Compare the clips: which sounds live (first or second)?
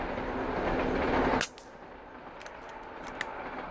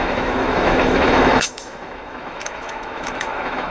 first